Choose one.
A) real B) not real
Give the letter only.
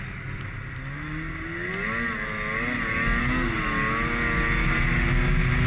A